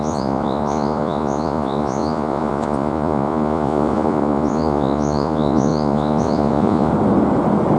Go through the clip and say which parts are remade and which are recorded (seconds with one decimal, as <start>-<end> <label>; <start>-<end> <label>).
0.0-6.9 remade; 6.9-7.8 recorded